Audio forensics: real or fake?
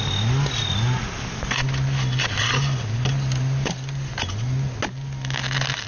real